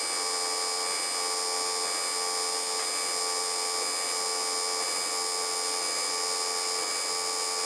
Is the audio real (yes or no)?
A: yes